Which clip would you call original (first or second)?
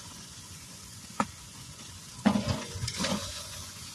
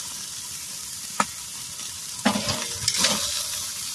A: second